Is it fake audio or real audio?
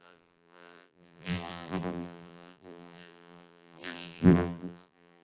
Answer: fake